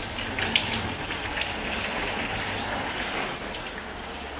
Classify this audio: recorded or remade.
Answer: recorded